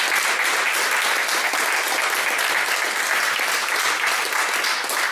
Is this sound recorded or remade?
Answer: recorded